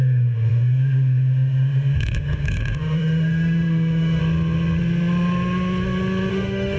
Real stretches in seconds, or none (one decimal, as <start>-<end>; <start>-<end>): 4.2-6.3